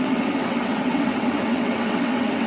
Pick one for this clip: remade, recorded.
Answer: remade